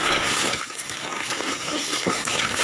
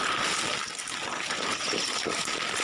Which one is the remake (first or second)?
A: first